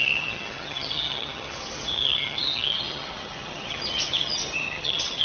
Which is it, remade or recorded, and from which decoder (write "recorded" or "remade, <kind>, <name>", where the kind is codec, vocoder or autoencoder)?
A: remade, vocoder, HiFi-GAN